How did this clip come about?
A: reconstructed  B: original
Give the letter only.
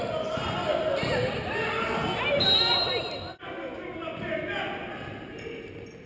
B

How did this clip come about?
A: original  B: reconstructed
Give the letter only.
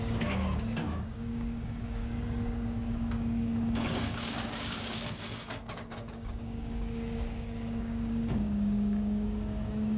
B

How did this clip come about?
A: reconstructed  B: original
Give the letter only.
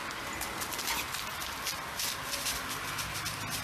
B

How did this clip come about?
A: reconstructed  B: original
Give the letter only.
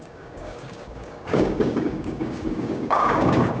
A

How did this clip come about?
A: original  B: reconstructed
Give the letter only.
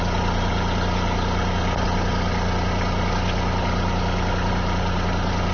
A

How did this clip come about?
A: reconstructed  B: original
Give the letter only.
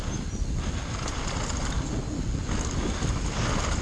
B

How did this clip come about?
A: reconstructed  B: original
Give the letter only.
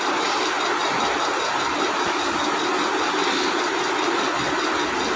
B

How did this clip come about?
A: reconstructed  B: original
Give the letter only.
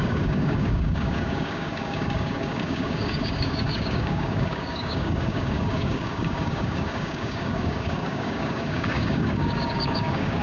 A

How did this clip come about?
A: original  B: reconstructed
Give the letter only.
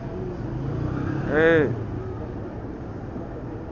A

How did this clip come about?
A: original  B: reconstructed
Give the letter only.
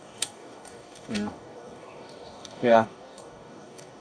B